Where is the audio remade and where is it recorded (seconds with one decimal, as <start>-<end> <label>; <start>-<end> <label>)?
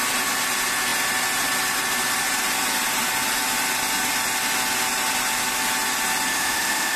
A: 0.0-6.3 recorded; 6.3-7.0 remade